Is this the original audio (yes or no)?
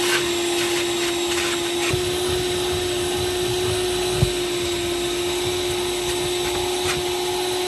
yes